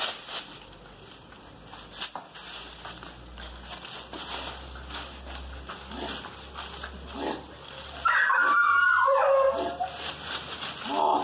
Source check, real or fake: real